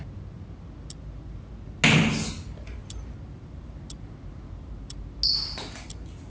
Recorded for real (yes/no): yes